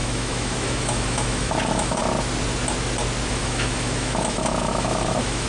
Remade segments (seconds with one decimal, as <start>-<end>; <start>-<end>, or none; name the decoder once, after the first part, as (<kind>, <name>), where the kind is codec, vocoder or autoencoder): 0.0-2.0 (autoencoder, DAC-VAE); 3.3-5.5